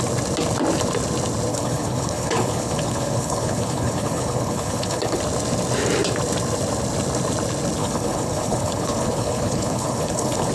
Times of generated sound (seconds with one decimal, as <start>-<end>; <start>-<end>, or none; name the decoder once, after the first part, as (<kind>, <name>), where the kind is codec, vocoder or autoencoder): 1.5-5.2 (codec, HILCodec); 7.8-10.5